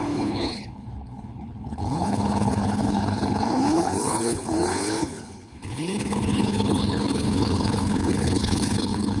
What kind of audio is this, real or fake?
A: fake